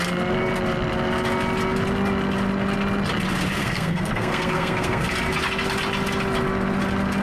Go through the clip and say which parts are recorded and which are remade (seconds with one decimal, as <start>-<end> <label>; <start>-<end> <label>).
0.0-3.6 recorded; 3.6-5.1 remade; 5.1-7.2 recorded